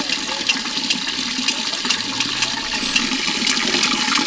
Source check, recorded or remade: recorded